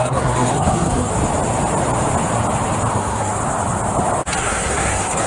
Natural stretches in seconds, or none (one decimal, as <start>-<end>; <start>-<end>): 1.1-2.9; 3.4-4.4